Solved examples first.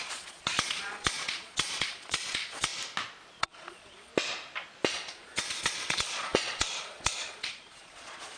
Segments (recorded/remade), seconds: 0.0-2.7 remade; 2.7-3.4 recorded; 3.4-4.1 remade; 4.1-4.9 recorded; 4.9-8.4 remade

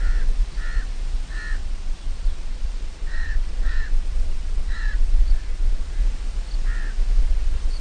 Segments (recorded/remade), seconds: 0.0-1.6 recorded; 1.6-6.0 remade; 6.0-7.2 recorded; 7.2-7.8 remade